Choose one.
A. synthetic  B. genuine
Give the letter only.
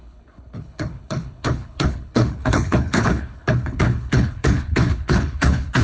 A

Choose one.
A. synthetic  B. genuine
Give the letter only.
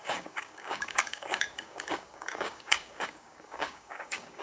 A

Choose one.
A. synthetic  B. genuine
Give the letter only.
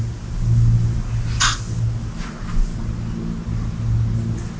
B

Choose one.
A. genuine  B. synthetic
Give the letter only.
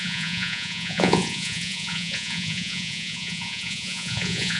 B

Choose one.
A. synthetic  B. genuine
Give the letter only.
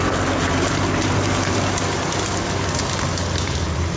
B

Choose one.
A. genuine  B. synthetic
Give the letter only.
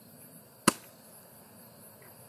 A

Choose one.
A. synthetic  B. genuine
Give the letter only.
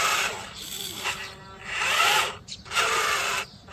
A